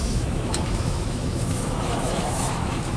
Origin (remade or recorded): remade